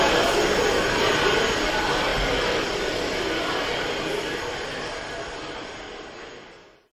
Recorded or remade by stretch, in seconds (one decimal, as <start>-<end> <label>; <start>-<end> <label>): 0.0-2.1 recorded; 2.1-6.3 remade; 6.3-7.0 recorded